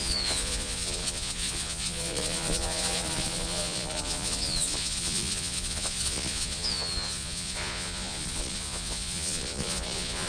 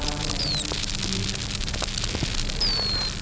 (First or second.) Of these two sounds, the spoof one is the first